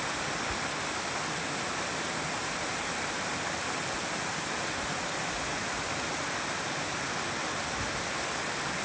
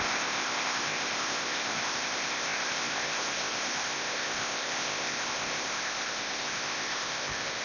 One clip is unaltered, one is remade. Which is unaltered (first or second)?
first